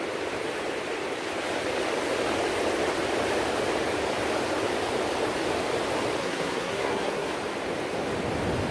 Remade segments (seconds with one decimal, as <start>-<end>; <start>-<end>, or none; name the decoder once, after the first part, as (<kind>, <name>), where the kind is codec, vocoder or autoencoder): 6.2-7.3 (codec, SNAC)